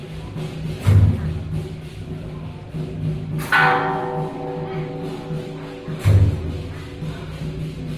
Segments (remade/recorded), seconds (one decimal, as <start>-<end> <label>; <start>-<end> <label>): 0.0-8.0 recorded